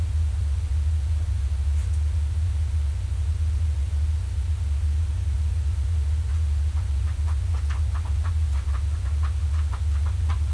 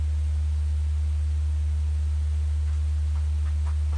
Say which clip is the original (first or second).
second